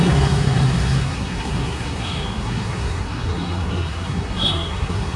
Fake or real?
fake